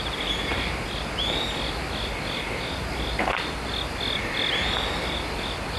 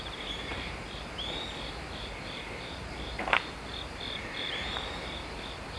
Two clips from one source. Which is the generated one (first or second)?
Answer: second